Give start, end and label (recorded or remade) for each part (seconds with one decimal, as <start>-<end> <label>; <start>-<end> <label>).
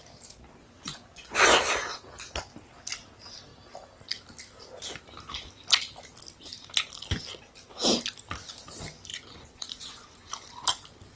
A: 0.0-0.6 recorded; 0.6-1.6 remade; 1.6-9.1 recorded; 9.1-10.3 remade; 10.3-11.2 recorded